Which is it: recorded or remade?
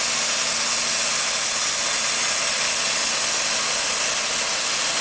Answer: recorded